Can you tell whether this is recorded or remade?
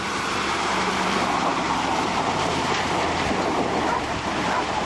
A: remade